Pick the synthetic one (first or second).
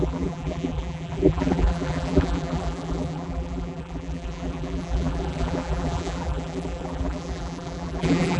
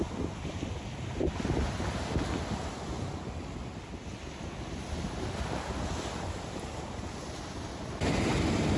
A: first